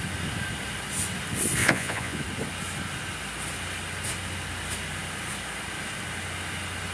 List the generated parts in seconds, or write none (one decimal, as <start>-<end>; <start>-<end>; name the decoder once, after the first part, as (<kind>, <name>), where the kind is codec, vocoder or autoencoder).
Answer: 1.6-2.2 (vocoder, Vocos)